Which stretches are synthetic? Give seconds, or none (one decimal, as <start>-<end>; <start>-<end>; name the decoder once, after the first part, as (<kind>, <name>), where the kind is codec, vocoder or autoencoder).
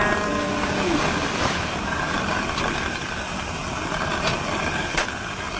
none